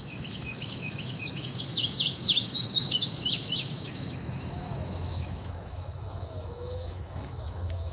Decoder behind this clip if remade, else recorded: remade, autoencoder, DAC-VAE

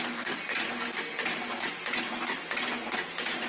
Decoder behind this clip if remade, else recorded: recorded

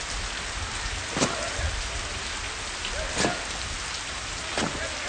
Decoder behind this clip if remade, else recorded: recorded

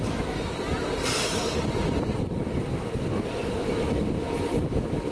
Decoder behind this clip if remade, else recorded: recorded